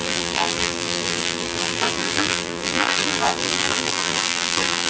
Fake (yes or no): yes